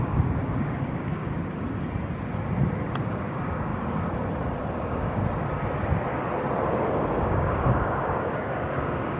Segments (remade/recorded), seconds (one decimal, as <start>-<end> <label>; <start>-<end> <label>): 0.0-1.4 remade; 1.4-3.1 recorded; 3.1-3.7 remade; 3.7-4.7 recorded; 4.7-5.2 remade; 5.2-6.9 recorded; 6.9-9.2 remade